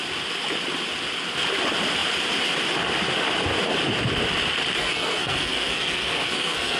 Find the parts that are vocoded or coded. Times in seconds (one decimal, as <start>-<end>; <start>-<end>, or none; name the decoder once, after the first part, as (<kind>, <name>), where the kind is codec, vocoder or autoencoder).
4.8-6.8 (codec, SNAC)